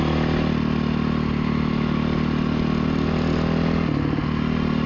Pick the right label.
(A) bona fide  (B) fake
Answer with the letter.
A